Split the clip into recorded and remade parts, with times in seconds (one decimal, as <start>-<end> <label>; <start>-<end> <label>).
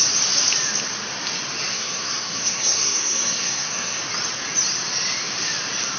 0.0-1.7 recorded; 1.7-4.0 remade; 4.0-6.0 recorded